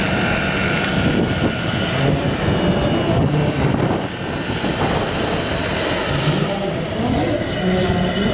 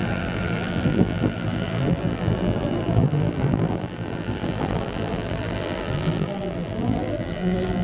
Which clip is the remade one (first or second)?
second